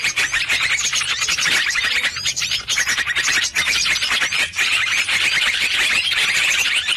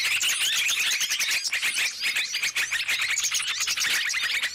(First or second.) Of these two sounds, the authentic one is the second